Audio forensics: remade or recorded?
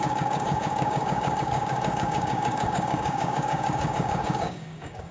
remade